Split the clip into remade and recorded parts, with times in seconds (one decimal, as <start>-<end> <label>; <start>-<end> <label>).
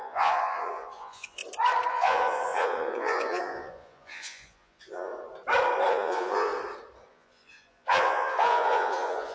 0.0-1.4 remade; 1.4-1.9 recorded; 1.9-5.1 remade; 5.1-5.9 recorded; 5.9-6.5 remade; 6.5-7.1 recorded; 7.1-9.3 remade